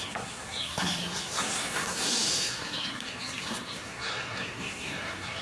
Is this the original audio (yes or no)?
no